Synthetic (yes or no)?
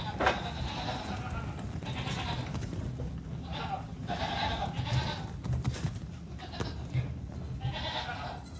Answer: no